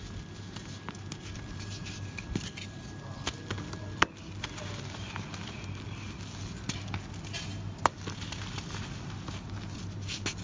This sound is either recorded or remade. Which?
recorded